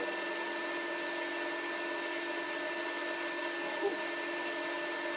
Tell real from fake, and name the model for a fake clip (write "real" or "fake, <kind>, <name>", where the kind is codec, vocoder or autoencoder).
real